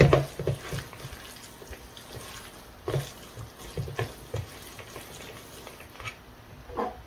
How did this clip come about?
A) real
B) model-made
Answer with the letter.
A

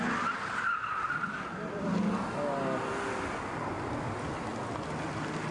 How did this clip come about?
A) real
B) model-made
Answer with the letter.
A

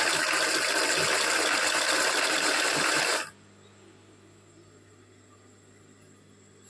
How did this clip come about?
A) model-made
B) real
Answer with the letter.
B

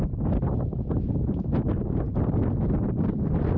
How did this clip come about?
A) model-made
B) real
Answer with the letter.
B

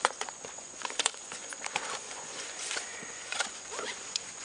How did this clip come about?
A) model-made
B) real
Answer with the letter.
A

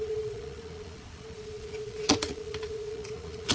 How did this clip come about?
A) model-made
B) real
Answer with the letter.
A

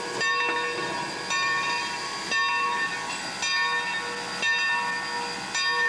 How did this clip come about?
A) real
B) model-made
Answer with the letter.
A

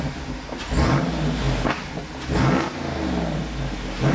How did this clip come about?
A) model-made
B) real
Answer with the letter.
B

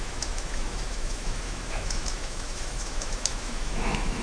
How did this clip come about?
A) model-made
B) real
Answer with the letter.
A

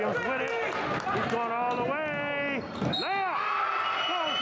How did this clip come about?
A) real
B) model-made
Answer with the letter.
A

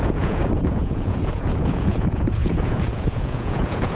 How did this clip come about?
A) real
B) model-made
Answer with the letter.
B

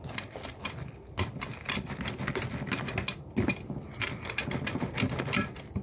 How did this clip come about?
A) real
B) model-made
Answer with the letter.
A